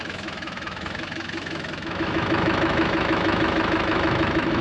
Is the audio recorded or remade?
remade